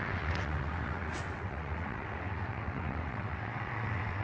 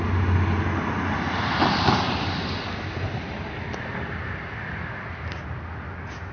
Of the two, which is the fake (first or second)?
first